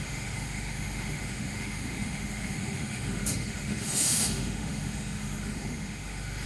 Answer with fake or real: fake